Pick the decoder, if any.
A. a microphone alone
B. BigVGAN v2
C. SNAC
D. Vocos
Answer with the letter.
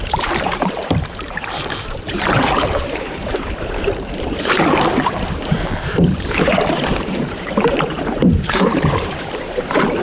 B